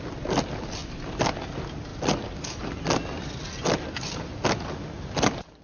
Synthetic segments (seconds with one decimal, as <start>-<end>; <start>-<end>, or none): none